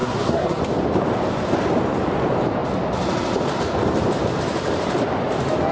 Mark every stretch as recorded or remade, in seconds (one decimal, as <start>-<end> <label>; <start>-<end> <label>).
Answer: 0.0-0.6 remade; 0.6-5.7 recorded